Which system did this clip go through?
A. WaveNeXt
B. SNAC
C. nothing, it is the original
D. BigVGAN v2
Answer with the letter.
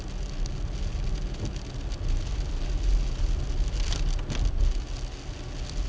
C